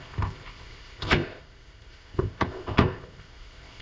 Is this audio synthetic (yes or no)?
yes